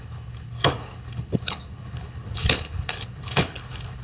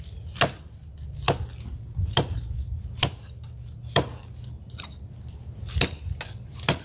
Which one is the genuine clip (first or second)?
second